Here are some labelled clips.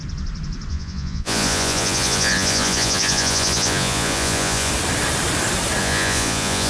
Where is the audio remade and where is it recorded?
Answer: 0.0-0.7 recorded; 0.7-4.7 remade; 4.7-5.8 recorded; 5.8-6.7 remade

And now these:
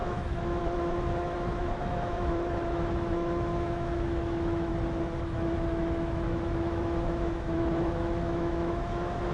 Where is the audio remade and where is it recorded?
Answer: 0.0-4.7 remade; 4.7-5.2 recorded; 5.2-9.3 remade